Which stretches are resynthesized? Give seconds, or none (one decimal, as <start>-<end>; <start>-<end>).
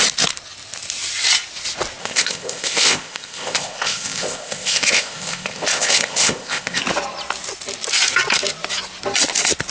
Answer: 2.0-6.8